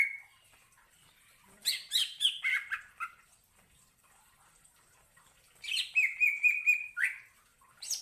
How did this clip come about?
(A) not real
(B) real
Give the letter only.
A